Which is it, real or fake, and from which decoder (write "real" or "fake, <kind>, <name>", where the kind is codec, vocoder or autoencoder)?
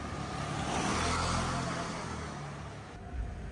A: real